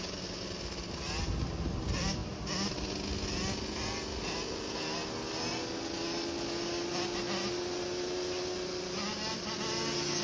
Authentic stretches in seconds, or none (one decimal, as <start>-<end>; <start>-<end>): 0.0-10.2

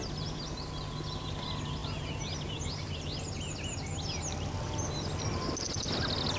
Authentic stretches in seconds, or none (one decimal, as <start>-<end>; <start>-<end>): 0.0-6.4